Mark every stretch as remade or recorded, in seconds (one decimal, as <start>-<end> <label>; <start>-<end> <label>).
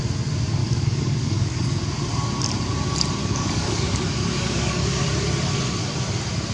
0.0-0.6 recorded; 0.6-1.8 remade; 1.8-3.2 recorded; 3.2-5.0 remade; 5.0-6.5 recorded